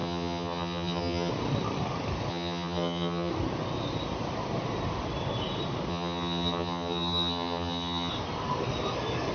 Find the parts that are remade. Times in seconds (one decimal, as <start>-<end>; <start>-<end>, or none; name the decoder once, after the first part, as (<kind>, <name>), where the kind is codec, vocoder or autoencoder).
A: 0.0-1.3 (vocoder, HiFi-GAN); 2.3-3.3; 5.9-8.1